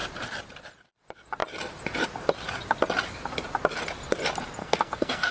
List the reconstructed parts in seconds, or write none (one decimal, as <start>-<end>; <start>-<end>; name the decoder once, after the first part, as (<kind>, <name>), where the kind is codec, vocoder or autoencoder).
4.6-5.3 (codec, SNAC)